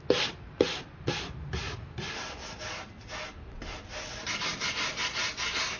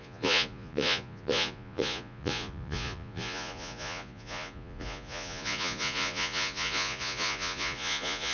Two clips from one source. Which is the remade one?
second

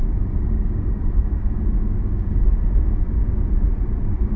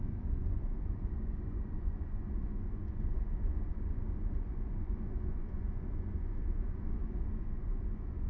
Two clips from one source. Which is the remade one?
second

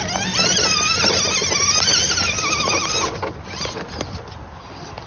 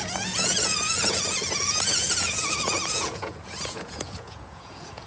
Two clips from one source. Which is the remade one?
second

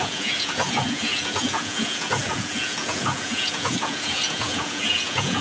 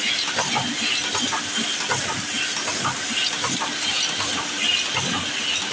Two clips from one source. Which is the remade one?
first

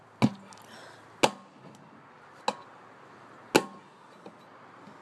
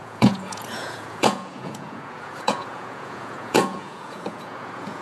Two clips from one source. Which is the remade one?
second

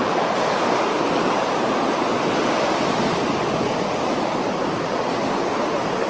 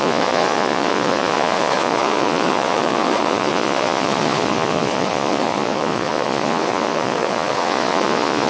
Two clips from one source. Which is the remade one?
second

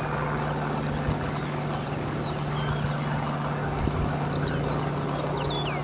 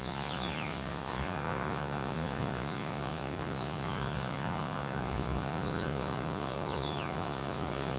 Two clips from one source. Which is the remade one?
second